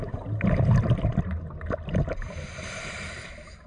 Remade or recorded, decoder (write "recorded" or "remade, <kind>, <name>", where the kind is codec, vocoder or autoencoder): recorded